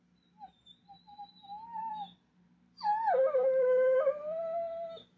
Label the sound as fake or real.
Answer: real